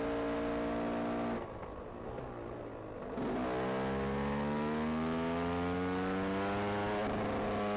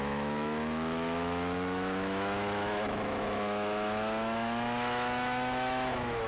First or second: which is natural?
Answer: first